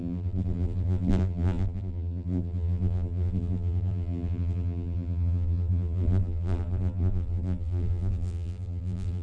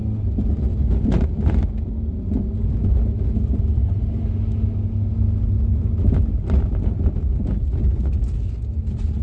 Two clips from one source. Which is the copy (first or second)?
first